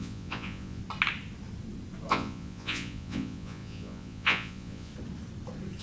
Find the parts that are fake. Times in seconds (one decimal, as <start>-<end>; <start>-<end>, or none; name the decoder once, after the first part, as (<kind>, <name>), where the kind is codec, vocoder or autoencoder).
0.0-0.8 (vocoder, Vocos); 2.1-4.9